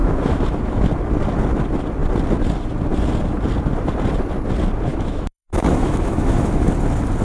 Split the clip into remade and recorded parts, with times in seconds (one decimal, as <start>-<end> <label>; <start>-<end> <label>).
0.0-0.9 remade; 0.9-4.9 recorded; 4.9-6.7 remade; 6.7-7.2 recorded